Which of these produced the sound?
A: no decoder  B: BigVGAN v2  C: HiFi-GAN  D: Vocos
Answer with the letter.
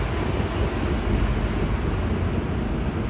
A